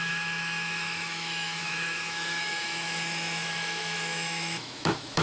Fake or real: fake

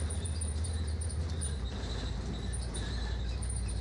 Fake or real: fake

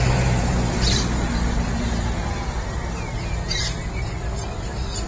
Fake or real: fake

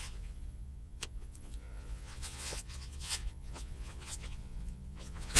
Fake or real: fake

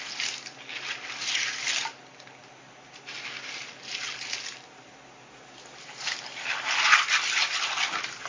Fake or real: real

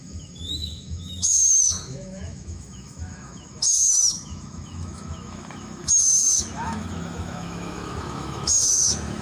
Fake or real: fake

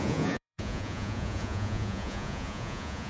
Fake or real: fake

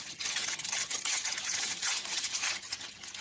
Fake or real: fake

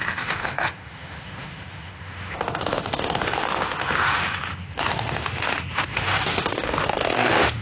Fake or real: fake